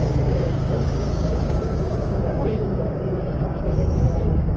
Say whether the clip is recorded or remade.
remade